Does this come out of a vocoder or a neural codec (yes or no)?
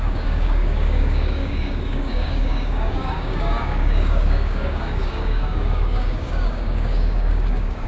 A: yes